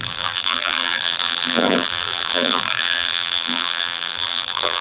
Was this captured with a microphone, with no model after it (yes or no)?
no